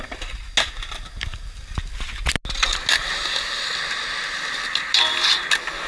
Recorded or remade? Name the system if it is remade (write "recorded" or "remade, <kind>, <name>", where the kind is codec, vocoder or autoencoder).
recorded